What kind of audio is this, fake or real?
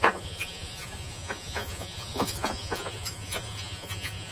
fake